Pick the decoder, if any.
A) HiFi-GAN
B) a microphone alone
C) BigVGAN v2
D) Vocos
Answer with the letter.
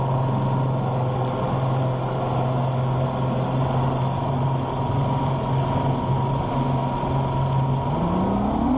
B